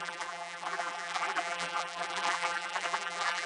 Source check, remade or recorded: remade